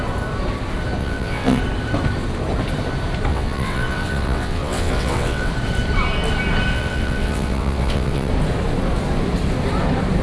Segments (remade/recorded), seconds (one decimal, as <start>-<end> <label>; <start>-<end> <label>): 0.0-1.0 recorded; 1.0-1.6 remade; 1.6-3.3 recorded; 3.3-5.5 remade; 5.5-6.7 recorded; 6.7-8.3 remade; 8.3-10.2 recorded